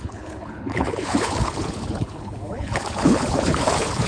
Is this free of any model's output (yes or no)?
no